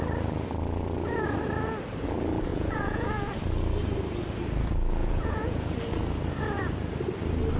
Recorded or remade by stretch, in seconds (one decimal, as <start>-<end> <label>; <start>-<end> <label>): 0.0-2.5 recorded; 2.5-3.3 remade; 3.3-5.0 recorded; 5.0-5.7 remade; 5.7-7.6 recorded